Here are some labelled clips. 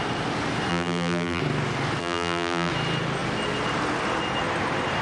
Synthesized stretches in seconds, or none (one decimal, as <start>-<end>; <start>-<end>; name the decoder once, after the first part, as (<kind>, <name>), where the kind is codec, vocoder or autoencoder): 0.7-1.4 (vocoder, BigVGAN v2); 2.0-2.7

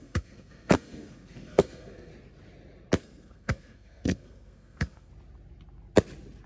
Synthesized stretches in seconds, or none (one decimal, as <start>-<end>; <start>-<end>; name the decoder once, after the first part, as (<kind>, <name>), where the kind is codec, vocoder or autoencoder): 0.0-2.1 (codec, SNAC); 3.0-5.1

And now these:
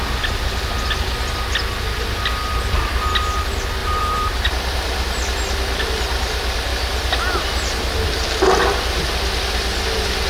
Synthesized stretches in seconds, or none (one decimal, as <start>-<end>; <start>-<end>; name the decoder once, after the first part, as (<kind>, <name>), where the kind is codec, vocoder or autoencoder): 3.8-4.5 (vocoder, BigVGAN v2)

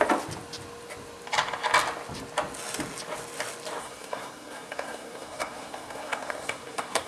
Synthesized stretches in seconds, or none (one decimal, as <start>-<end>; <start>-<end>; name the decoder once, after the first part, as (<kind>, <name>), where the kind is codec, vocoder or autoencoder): 3.8-7.1 (codec, SNAC)

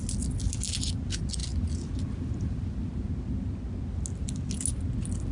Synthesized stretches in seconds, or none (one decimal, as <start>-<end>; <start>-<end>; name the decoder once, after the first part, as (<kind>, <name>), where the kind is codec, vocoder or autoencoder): none

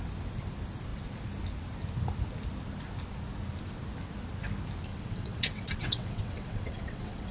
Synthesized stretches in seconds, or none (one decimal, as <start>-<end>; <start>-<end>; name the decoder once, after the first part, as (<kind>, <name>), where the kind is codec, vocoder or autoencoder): 4.9-7.3 (vocoder, WaveNeXt)